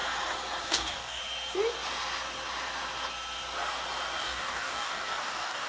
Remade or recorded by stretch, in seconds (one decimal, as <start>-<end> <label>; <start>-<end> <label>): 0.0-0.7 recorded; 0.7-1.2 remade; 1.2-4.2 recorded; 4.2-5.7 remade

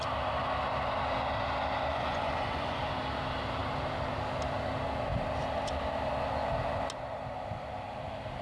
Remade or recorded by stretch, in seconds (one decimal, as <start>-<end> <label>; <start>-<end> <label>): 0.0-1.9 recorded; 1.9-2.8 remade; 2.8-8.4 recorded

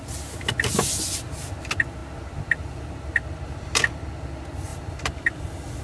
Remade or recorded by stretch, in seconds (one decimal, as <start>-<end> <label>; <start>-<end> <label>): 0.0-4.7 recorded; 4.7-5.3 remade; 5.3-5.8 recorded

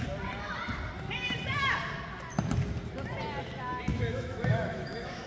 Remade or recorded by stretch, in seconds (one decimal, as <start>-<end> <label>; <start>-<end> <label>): 0.0-3.9 recorded; 3.9-5.3 remade